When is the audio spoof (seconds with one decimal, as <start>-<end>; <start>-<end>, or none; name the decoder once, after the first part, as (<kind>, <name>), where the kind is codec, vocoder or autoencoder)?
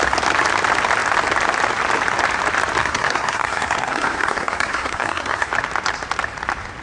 2.8-5.5 (codec, SNAC)